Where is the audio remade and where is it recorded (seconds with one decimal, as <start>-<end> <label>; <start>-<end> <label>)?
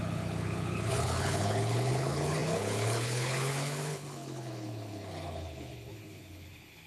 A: 0.0-6.9 remade